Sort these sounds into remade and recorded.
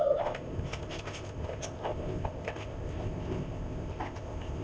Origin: remade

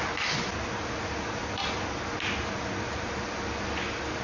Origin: recorded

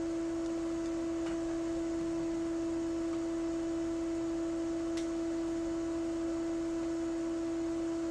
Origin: recorded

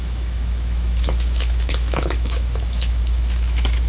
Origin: remade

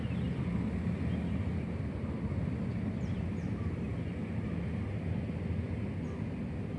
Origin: recorded